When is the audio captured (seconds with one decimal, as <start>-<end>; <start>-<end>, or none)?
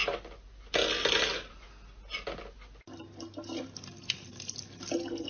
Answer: 0.0-5.3